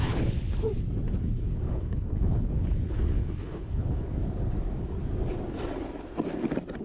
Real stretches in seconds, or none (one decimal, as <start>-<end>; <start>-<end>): 0.7-1.2; 4.2-6.8